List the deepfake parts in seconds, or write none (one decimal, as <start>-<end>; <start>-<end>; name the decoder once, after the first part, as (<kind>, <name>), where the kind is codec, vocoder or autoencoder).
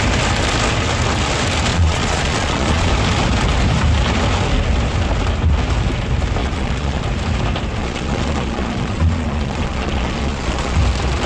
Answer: 1.7-2.9 (vocoder, Vocos); 6.4-7.0; 7.8-10.8